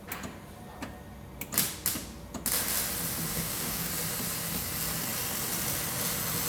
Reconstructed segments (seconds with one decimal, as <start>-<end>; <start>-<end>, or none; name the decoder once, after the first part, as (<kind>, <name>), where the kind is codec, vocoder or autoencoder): 3.3-3.9 (codec, DAC)